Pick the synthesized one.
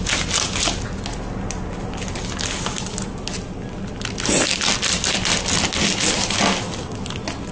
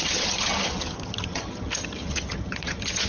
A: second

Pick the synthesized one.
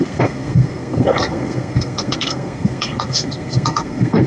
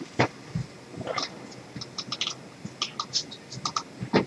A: first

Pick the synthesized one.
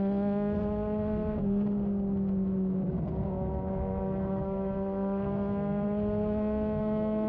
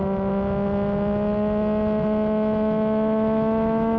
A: first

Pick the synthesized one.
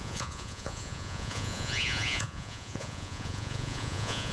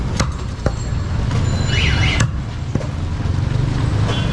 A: first